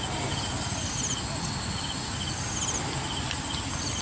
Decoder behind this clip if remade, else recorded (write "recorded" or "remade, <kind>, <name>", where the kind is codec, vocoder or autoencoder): recorded